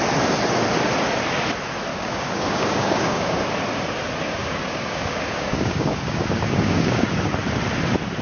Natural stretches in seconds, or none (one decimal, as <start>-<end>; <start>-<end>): 0.0-1.9; 3.4-4.4; 7.2-8.2